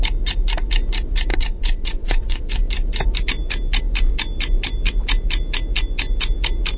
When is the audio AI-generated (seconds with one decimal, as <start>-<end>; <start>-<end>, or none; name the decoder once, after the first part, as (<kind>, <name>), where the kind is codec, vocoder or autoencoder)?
1.3-2.4 (vocoder, WaveNeXt)